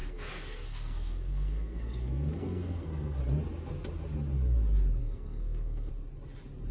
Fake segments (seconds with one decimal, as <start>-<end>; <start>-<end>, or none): 0.0-3.2; 5.0-5.9